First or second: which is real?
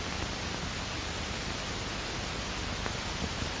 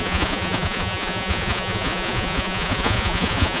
first